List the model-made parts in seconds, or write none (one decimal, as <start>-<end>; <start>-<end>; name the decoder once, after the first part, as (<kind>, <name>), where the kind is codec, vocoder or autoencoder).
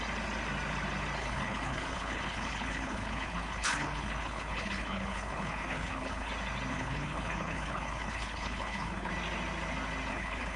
1.2-6.3 (codec, HILCodec); 6.7-9.1; 10.1-10.6